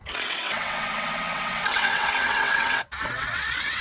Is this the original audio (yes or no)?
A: no